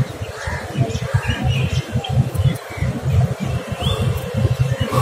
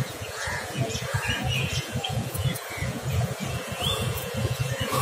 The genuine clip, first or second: first